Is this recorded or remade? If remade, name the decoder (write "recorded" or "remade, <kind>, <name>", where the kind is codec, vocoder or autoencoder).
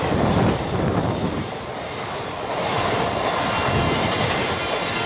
recorded